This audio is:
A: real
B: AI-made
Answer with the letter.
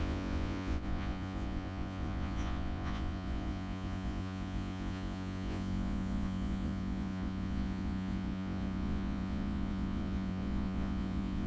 B